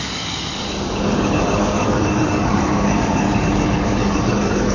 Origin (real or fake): fake